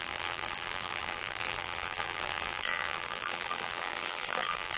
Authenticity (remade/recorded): remade